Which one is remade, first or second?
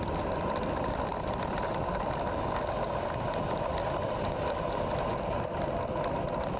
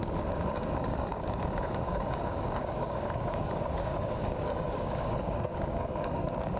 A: second